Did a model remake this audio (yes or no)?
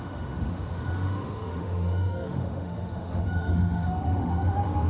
yes